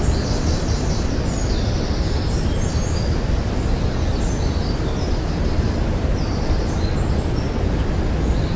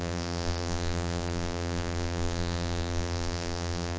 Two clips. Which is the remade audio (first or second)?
second